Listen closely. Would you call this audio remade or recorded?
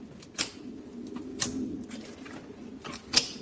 recorded